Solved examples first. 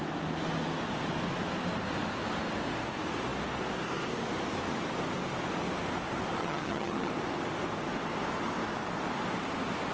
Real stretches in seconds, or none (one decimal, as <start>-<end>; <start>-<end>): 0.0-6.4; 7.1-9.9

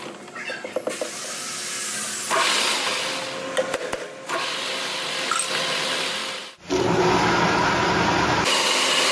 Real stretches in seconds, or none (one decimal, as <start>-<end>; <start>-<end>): 0.0-9.1

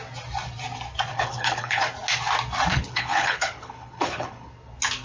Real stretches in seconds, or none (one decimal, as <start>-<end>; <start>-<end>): 0.0-1.1; 1.8-2.7; 4.5-5.0

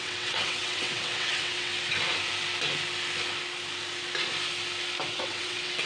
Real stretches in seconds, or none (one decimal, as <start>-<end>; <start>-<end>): 1.7-5.1